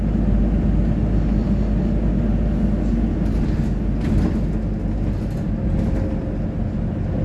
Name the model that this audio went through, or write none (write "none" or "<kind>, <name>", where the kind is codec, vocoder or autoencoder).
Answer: none